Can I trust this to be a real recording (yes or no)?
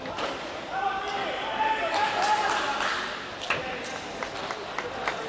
yes